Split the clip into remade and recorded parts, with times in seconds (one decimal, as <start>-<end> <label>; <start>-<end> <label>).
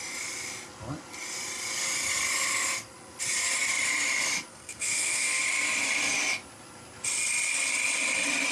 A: 0.0-4.5 recorded; 4.5-5.4 remade; 5.4-8.5 recorded